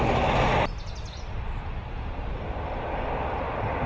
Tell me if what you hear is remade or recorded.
recorded